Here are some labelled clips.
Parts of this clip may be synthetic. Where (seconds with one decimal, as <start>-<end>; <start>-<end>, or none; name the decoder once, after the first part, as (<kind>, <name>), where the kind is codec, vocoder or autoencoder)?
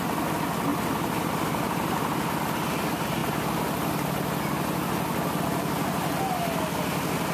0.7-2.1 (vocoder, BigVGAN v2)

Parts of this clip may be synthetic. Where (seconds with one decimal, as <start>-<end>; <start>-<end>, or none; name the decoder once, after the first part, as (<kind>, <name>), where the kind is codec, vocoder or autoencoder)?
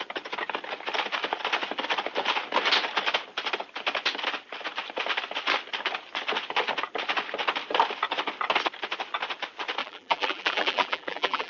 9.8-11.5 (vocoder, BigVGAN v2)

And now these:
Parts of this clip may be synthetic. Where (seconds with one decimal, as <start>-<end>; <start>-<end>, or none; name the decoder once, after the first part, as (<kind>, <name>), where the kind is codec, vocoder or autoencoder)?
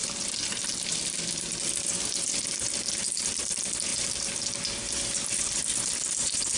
0.0-6.6 (vocoder, BigVGAN v2)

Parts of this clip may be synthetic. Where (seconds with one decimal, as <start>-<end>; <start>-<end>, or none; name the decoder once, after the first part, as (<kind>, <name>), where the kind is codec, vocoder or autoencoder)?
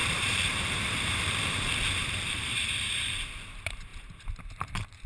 0.0-3.1 (vocoder, BigVGAN v2)